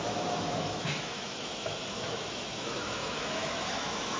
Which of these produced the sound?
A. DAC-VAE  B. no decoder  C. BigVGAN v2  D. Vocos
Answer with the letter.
A